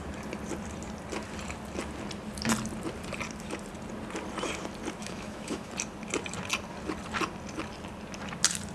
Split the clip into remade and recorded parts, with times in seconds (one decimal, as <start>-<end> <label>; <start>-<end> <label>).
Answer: 0.0-5.0 recorded; 5.0-5.7 remade; 5.7-8.7 recorded